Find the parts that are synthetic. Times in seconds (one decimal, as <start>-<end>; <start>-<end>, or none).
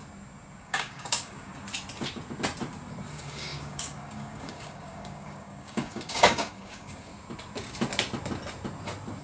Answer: 0.6-1.5; 3.1-7.1